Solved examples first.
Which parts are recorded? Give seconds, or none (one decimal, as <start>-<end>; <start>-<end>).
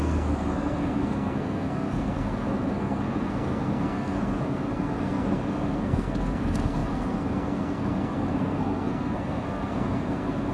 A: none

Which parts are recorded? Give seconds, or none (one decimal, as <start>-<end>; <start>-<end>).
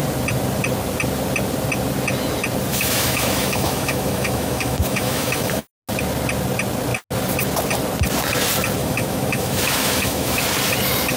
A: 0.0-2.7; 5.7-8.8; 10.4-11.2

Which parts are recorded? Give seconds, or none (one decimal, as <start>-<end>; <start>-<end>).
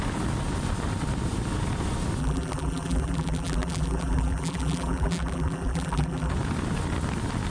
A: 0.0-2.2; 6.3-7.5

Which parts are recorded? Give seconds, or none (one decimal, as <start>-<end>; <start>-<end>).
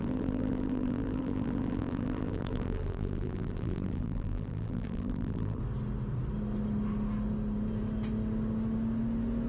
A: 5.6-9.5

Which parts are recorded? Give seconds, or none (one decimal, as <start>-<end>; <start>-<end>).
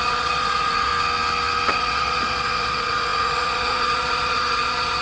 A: 0.9-1.7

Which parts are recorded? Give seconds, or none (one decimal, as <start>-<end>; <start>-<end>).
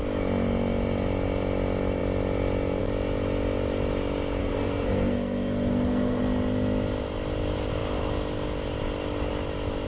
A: 0.0-4.4; 6.2-9.9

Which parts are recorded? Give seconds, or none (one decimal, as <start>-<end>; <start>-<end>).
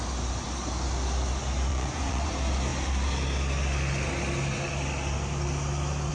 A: 0.0-1.7; 2.3-6.1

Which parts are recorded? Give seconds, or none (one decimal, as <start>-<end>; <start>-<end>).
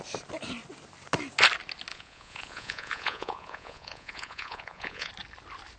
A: 0.0-1.9; 5.1-5.8